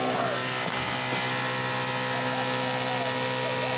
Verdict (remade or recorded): recorded